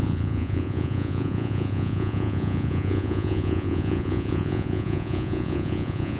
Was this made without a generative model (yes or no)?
no